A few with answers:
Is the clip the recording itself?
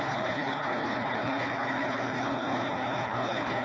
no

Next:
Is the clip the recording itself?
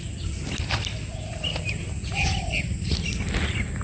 yes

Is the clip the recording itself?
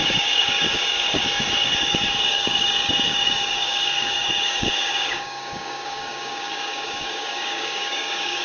no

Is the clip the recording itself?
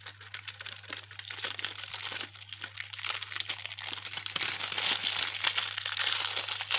yes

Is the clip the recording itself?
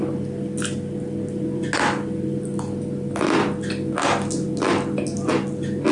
yes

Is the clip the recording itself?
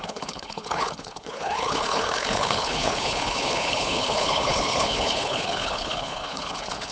no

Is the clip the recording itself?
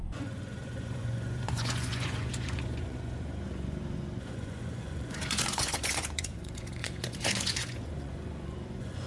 no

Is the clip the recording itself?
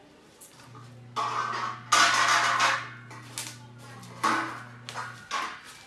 yes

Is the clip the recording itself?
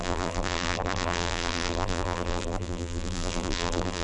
no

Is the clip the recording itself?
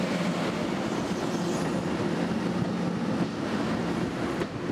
yes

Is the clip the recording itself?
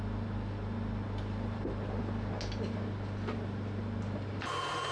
yes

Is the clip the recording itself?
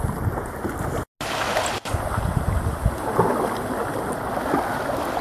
yes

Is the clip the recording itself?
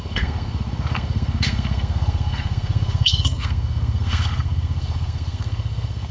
no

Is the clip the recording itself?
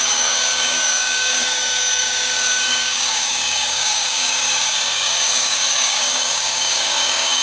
no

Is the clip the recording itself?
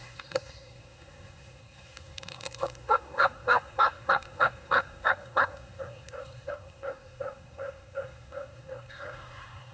no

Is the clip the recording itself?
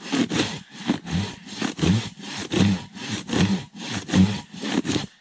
yes